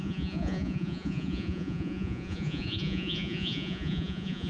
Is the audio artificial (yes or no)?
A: yes